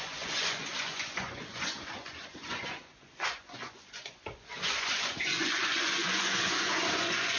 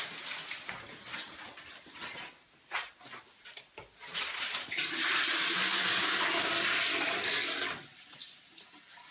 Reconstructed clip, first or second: first